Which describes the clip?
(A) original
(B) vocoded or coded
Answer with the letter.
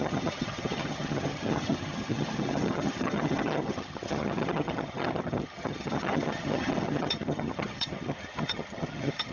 B